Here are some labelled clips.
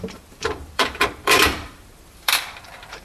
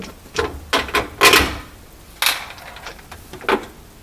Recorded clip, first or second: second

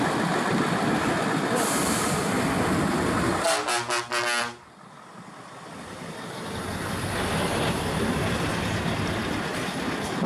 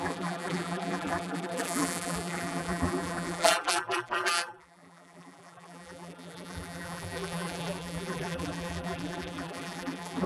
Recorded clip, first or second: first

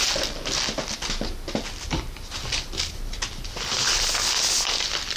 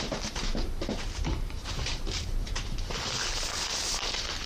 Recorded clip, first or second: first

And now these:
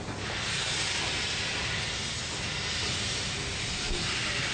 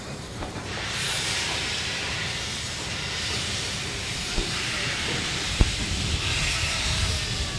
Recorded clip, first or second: first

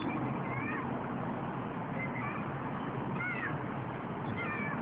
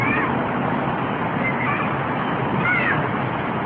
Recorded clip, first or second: first